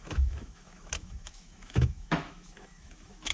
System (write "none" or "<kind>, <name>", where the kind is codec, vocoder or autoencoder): autoencoder, DAC-VAE